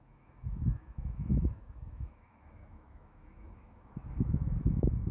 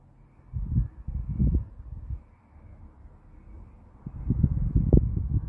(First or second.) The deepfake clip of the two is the first